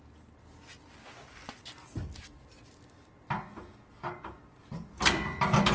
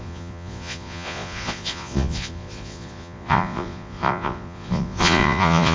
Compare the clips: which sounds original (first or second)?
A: first